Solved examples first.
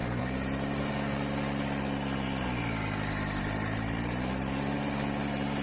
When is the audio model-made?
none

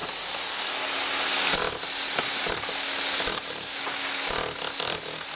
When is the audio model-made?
none

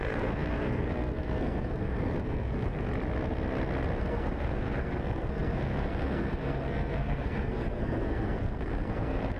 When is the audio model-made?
0.0-2.9 (codec, SNAC); 4.0-9.4

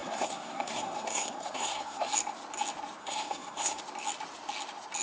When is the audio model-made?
0.0-2.1 (codec, SNAC); 3.0-3.8